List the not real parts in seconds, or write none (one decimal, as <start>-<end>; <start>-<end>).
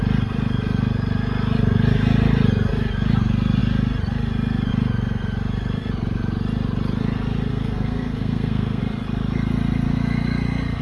7.5-8.8